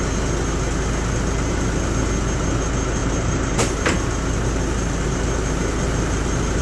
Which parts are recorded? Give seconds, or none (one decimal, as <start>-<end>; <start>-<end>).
0.0-3.0

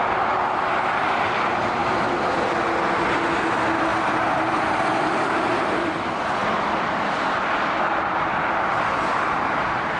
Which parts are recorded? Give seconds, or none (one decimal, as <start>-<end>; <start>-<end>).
0.0-6.4; 9.5-10.0